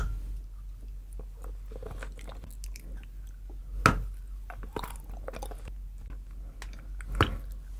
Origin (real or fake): real